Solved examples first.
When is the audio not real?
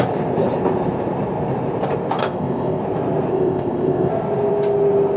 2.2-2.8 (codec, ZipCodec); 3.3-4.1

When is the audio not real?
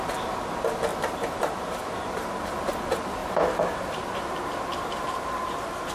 0.9-2.4 (vocoder, BigVGAN v2); 3.2-4.4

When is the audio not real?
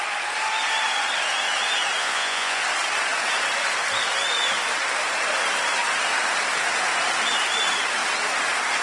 2.0-2.6 (vocoder, Vocos)